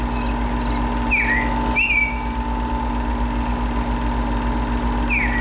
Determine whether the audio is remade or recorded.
recorded